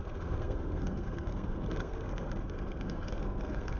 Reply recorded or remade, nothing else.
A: remade